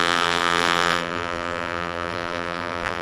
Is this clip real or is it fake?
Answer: fake